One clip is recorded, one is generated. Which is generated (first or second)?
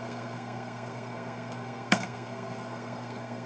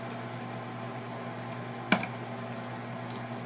first